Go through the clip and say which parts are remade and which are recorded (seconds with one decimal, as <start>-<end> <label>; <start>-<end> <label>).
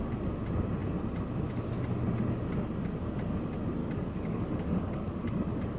0.0-3.8 recorded; 3.8-5.8 remade